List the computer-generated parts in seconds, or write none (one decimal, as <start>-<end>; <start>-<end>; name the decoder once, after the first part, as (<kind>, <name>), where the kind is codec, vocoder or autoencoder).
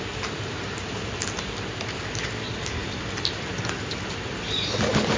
none